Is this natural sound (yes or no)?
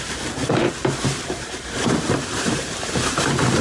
no